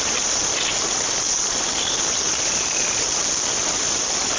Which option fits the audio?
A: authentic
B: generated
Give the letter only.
A